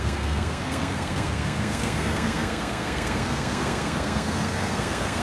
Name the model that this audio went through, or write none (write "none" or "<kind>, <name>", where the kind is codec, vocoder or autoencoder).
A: codec, SNAC